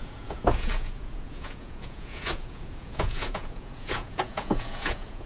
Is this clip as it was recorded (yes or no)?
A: no